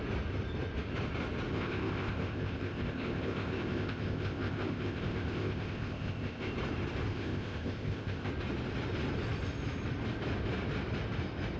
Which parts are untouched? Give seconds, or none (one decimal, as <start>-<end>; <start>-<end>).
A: 0.0-1.5; 6.5-7.1; 8.3-11.6